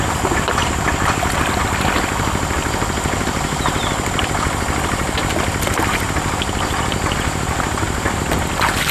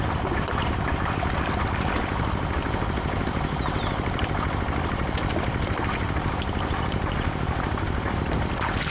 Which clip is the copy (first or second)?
second